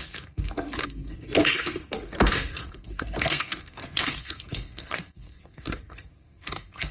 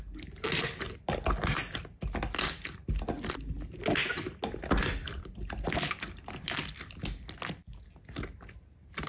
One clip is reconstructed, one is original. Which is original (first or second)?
second